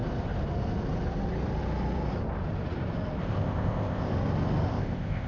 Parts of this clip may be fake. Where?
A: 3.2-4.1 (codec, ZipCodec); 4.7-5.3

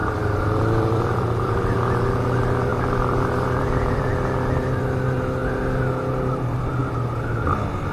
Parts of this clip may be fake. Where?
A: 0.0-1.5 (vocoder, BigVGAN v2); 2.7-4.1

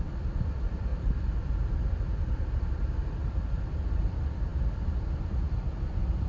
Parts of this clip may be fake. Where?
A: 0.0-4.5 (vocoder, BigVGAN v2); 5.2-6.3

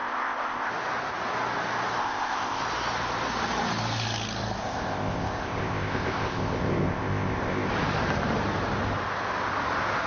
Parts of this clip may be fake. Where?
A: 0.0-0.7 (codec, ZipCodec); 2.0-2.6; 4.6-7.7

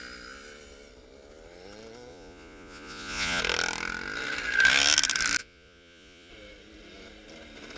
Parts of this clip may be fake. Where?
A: 2.1-3.4 (vocoder, Vocos); 5.4-6.3